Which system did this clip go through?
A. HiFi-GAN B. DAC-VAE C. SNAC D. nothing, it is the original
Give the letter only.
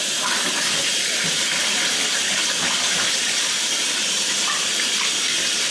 D